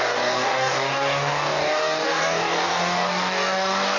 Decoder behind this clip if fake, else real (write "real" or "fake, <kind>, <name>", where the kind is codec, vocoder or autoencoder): fake, codec, DAC